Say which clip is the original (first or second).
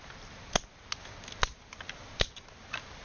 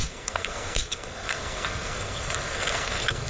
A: first